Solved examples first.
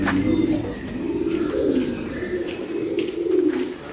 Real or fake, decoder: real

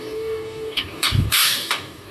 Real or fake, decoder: fake, codec, DAC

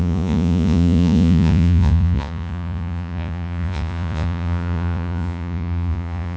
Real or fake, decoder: fake, vocoder, Vocos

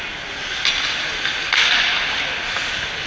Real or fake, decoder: real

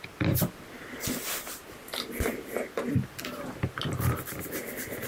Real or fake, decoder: real